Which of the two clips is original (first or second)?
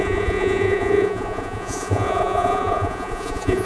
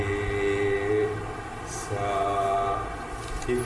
second